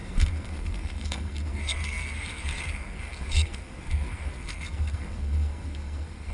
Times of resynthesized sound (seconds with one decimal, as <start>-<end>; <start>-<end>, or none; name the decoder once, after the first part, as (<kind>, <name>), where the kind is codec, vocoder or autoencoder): 0.0-6.3 (codec, SNAC)

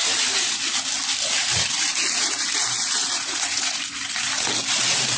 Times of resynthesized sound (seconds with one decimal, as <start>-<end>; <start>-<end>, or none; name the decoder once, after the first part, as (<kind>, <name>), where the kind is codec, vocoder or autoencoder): 0.0-0.6 (vocoder, Vocos); 1.2-1.7; 3.0-4.3

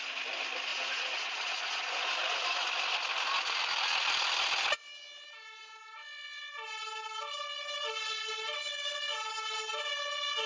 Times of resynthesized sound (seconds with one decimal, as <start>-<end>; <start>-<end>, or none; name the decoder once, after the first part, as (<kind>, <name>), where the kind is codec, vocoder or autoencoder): 0.7-1.9 (vocoder, Vocos)

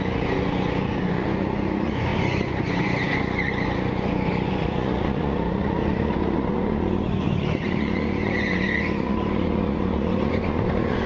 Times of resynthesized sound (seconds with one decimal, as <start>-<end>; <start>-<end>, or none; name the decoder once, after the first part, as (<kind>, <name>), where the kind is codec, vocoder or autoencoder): 0.0-11.1 (vocoder, Vocos)

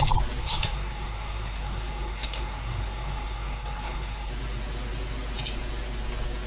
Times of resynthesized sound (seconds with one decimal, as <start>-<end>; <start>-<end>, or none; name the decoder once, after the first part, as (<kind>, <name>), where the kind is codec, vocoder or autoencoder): 0.4-4.3 (codec, SNAC)

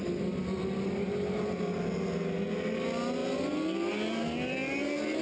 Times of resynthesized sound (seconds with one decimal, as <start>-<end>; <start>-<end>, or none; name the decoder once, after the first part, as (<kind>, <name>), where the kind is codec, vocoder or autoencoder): none

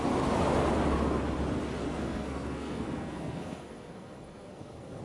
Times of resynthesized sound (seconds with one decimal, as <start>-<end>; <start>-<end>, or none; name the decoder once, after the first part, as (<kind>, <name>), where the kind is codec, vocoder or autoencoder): 1.8-5.0 (codec, SNAC)

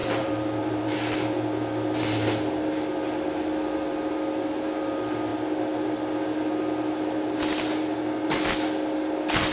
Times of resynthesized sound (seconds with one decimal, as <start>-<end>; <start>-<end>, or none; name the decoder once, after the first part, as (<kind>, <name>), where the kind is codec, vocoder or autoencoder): 0.0-1.0 (vocoder, BigVGAN v2)